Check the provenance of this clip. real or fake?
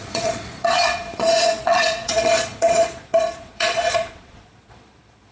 fake